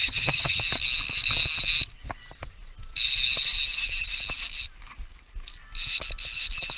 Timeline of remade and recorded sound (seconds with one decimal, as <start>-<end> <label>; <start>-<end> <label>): 0.0-0.6 remade; 0.6-6.8 recorded